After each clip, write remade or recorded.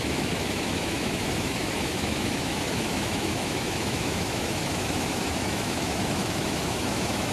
remade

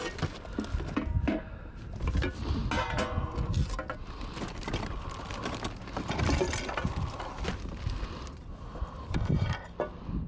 recorded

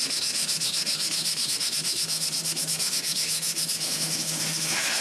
remade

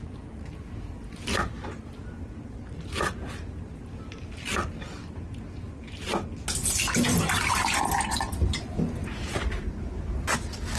recorded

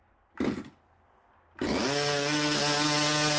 recorded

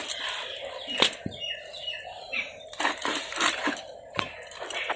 recorded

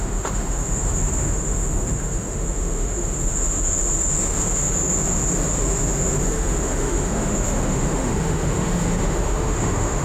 remade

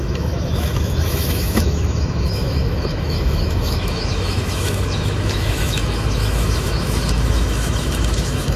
remade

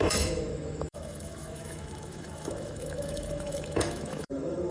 remade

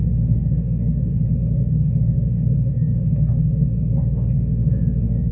remade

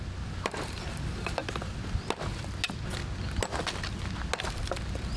recorded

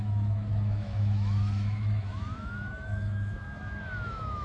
remade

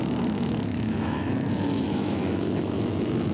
remade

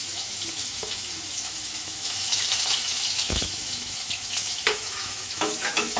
remade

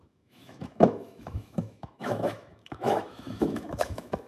remade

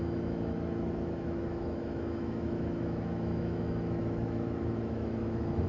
remade